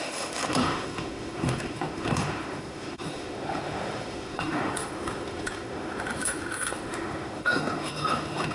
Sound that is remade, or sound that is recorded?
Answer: remade